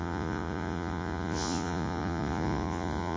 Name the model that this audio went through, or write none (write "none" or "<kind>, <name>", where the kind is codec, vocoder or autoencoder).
vocoder, Vocos